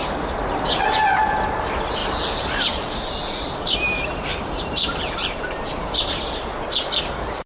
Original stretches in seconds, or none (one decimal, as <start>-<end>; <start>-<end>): 0.0-2.0; 6.1-7.5